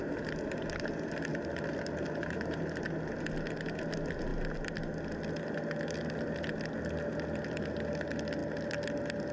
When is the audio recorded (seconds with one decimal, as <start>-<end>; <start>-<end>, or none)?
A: 0.0-1.3; 2.6-9.3